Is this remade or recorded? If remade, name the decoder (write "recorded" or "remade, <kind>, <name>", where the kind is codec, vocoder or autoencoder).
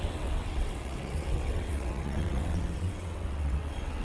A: remade, vocoder, WaveNeXt